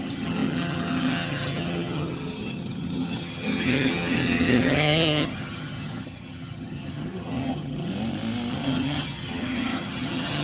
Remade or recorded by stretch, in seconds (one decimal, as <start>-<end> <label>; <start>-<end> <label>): 0.0-7.9 remade; 7.9-8.5 recorded; 8.5-10.4 remade